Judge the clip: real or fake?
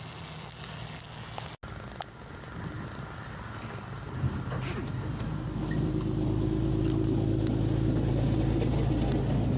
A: real